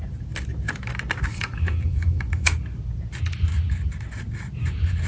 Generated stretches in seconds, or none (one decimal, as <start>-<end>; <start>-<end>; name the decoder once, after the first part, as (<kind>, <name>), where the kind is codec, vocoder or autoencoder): 1.3-2.5 (autoencoder, DAC-VAE)